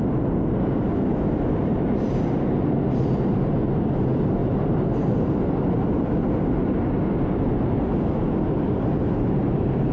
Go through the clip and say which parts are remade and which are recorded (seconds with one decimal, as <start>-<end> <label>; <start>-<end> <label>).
0.0-4.4 recorded; 4.4-5.3 remade; 5.3-9.9 recorded